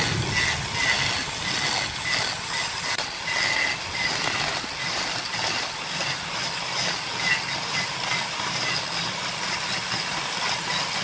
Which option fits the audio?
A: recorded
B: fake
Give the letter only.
A